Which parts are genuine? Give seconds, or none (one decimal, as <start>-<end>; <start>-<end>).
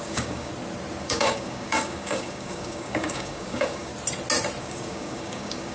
0.5-1.0; 3.9-4.6